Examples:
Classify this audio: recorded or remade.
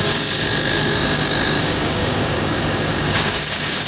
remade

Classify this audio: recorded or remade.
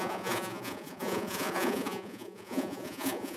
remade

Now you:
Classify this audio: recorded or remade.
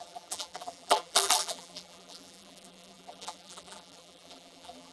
remade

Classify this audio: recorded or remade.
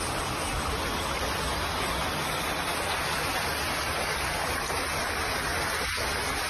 recorded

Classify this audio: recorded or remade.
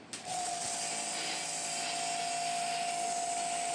recorded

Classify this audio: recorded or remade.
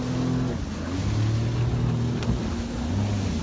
recorded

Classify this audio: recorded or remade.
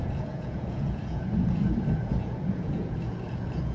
remade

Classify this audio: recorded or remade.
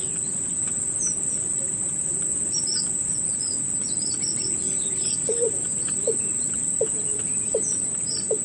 recorded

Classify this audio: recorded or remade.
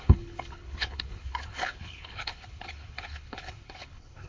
remade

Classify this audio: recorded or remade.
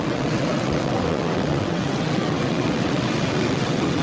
remade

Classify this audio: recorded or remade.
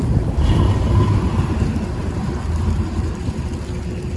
recorded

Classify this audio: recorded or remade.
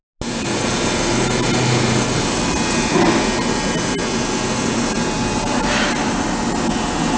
recorded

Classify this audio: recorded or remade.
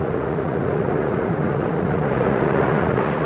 remade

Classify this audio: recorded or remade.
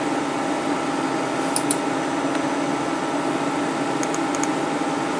recorded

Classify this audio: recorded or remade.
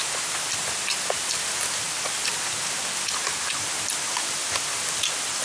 recorded